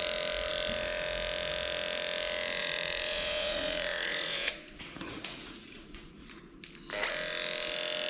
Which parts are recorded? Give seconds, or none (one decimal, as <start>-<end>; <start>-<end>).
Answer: 0.0-2.6; 6.4-8.1